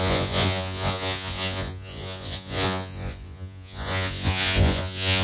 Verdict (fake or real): fake